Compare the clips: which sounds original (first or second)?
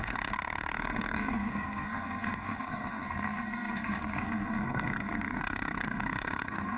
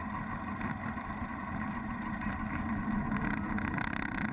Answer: second